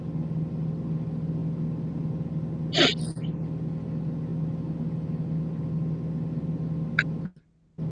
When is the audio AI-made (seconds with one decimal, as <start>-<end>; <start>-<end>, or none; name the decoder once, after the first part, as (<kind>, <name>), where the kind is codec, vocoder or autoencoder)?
none